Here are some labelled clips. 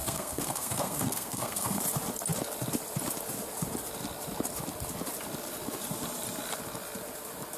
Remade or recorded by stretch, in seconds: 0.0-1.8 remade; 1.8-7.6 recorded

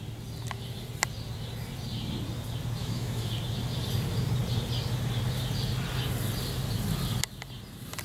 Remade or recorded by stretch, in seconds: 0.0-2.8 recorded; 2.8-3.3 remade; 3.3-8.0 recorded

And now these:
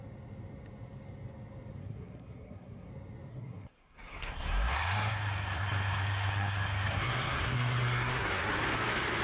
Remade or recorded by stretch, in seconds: 0.0-1.8 recorded; 1.8-2.9 remade; 2.9-3.3 recorded; 3.3-8.5 remade; 8.5-9.2 recorded